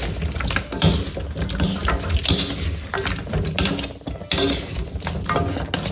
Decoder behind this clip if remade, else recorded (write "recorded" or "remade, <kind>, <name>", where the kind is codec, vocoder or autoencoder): recorded